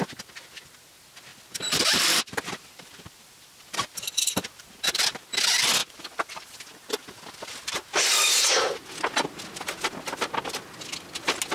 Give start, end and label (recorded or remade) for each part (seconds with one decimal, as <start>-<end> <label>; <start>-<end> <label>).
0.0-1.3 recorded; 1.3-4.8 remade; 4.8-5.8 recorded; 5.8-8.3 remade; 8.3-11.5 recorded